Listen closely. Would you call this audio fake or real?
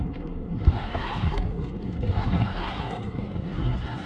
fake